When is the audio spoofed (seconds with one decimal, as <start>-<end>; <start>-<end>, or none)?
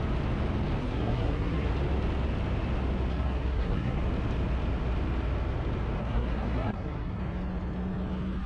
0.8-1.7; 3.1-4.0; 6.0-7.2